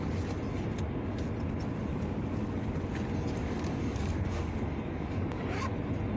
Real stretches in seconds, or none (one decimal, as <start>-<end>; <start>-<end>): 0.0-1.9; 2.8-3.4; 5.4-6.2